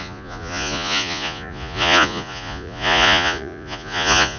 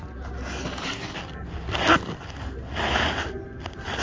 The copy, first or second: first